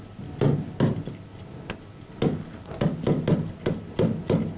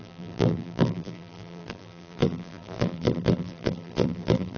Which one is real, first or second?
first